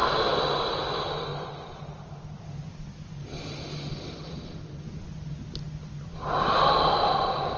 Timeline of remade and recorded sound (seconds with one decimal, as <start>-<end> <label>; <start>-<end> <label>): 0.0-7.6 recorded